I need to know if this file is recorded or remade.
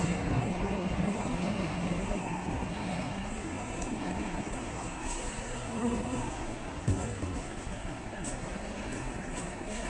remade